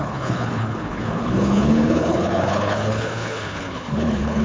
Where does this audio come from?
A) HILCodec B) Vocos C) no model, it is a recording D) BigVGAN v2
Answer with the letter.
A